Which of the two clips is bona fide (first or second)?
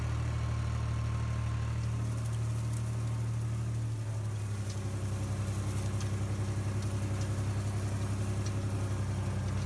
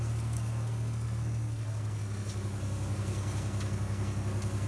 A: first